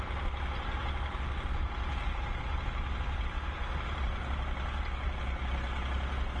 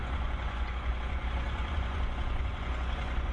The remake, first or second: second